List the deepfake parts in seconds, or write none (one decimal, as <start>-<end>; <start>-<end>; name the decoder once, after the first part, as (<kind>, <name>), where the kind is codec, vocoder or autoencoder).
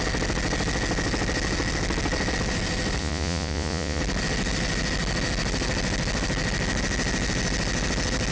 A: 3.0-4.0 (vocoder, Vocos)